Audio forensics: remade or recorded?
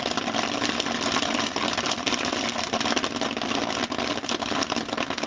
recorded